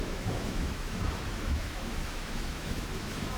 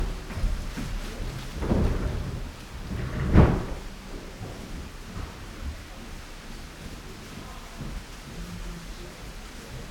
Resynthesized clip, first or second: first